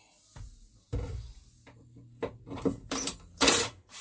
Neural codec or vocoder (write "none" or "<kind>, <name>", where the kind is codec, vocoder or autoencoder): vocoder, BigVGAN v2